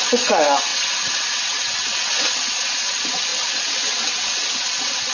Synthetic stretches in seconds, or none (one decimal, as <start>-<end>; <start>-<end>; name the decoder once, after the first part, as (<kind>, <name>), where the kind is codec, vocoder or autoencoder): 0.0-5.1 (vocoder, WaveNeXt)